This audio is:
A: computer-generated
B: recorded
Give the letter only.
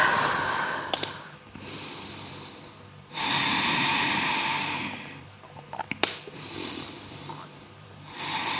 A